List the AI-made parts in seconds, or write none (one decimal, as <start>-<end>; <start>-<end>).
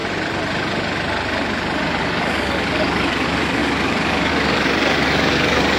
2.0-5.8